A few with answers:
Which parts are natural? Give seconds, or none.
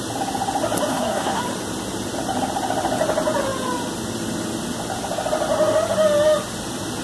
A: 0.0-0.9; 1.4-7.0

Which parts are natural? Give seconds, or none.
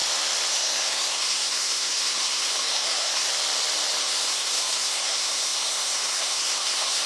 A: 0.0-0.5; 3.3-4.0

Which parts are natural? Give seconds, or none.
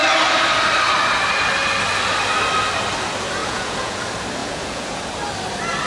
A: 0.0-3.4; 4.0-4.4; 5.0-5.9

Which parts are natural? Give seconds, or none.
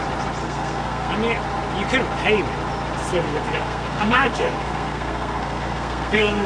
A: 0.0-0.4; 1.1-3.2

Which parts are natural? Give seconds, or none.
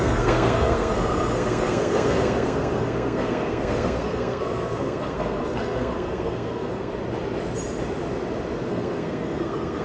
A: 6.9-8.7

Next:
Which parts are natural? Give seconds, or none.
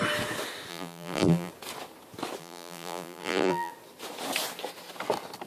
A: 0.0-0.7; 1.5-2.4; 3.7-5.5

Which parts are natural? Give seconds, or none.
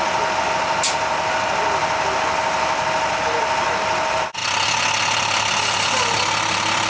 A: 0.0-6.9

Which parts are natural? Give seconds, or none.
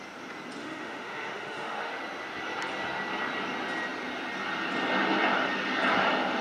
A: 0.0-0.6; 1.9-6.4